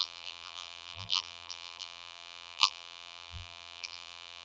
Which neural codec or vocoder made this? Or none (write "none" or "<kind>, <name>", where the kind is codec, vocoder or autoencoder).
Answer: vocoder, BigVGAN v2